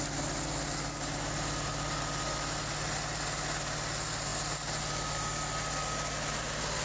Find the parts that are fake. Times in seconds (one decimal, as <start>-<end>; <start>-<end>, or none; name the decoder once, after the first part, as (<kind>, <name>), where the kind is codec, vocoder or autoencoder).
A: none